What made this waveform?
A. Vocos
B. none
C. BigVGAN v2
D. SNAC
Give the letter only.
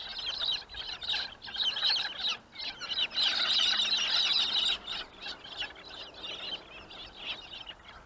B